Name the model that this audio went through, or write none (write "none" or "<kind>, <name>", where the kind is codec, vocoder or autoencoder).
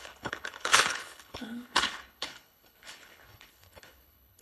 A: codec, HILCodec